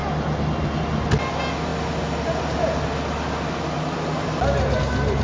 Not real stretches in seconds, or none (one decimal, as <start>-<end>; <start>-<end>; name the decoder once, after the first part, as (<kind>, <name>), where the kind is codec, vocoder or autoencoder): none